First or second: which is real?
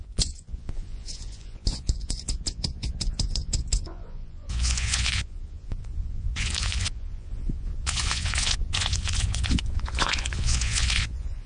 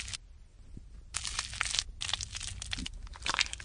second